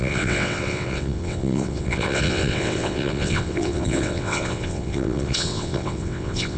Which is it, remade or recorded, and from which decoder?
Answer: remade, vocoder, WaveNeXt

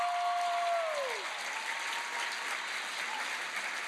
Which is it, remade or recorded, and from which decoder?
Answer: recorded